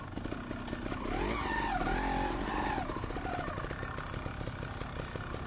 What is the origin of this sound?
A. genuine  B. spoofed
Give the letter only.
A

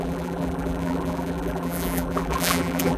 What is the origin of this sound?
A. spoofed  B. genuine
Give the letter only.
A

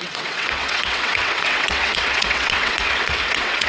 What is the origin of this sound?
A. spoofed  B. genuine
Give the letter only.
A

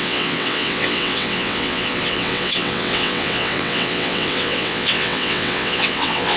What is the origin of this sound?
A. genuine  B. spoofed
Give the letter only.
B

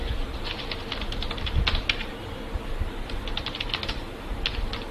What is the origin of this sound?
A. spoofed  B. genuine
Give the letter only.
B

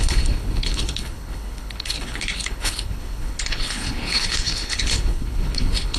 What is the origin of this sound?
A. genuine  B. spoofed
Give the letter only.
B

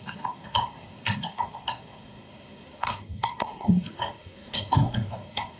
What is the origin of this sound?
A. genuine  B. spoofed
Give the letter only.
B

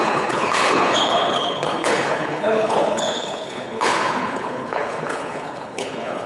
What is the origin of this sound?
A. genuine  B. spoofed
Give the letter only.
B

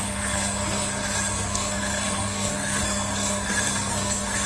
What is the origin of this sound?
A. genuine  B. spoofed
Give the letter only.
B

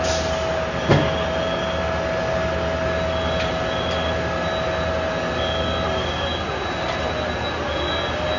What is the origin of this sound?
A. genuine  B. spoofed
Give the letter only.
A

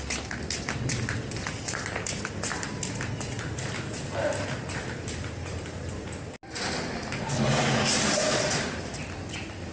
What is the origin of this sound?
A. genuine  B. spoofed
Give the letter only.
A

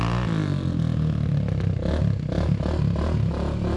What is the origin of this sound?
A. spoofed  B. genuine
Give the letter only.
B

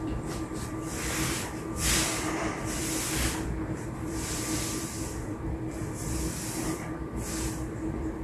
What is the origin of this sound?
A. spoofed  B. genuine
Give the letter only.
A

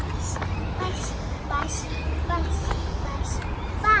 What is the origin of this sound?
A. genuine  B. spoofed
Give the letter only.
A